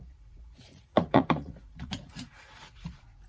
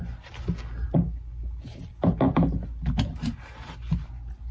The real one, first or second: second